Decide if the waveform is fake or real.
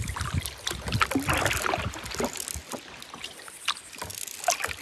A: real